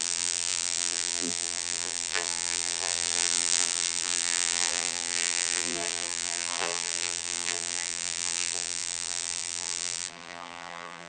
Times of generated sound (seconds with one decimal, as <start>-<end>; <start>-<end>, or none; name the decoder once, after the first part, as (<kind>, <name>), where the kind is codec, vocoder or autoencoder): 0.0-11.1 (vocoder, BigVGAN v2)